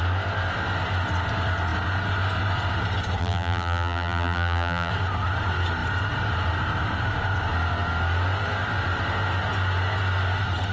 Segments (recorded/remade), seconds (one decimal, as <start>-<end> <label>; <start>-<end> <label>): 0.0-3.2 recorded; 3.2-4.9 remade; 4.9-10.7 recorded